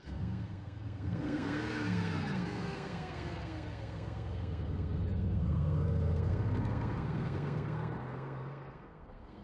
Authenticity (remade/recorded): remade